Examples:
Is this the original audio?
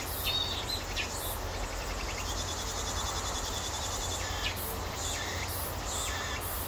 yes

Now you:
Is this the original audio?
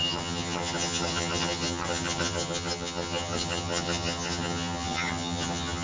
no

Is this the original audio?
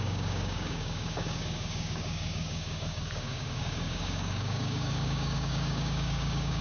no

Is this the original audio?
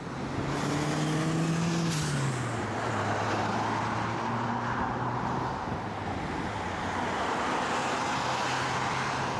yes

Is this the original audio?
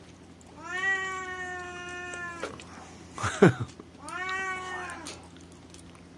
yes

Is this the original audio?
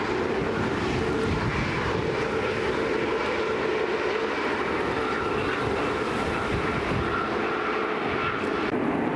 yes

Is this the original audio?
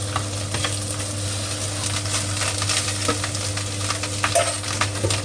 yes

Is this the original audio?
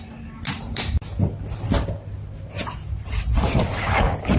no